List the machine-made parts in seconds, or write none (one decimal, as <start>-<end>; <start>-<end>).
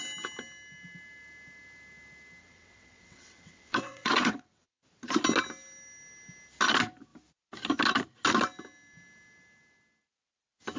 2.4-4.8